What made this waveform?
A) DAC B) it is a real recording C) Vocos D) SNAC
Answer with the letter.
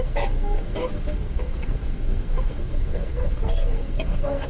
D